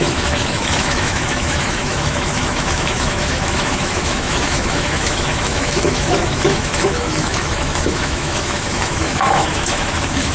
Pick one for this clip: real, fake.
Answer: fake